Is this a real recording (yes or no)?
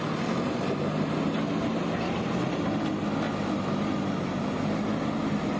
yes